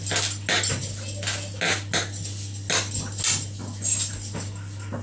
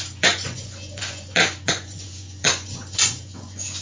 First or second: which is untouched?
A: first